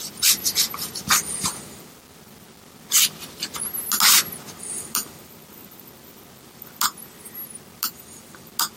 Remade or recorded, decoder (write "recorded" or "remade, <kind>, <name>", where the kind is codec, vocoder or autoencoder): recorded